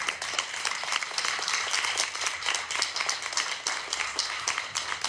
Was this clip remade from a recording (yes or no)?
no